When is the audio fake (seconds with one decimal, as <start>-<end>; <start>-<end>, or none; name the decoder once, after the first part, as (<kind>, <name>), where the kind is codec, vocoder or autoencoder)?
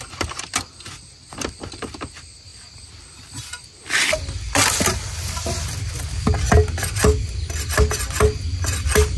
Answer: none